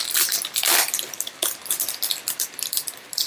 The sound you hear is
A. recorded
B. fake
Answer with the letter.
B